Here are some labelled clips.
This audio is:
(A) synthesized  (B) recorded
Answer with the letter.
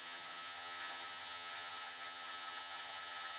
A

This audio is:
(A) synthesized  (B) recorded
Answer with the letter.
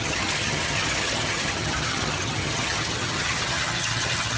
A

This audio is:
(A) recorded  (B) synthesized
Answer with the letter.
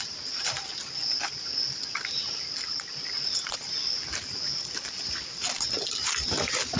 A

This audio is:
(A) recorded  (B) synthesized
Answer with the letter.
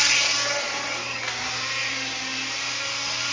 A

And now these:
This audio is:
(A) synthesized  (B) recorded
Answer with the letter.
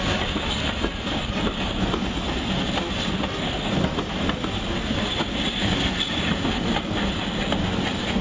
B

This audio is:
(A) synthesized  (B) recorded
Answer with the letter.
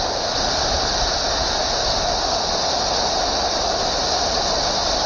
B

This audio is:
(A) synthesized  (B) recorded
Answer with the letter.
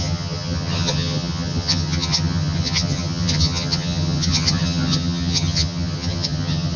A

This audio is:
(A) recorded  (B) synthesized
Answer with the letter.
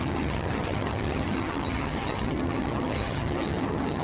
B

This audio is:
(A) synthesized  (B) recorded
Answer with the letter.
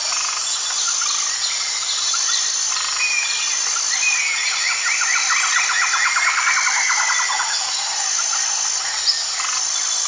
B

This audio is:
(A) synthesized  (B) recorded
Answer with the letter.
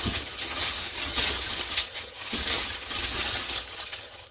A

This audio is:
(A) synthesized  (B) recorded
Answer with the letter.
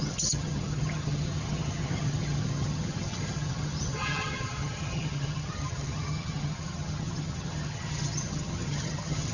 A